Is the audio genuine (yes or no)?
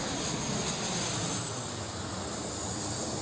yes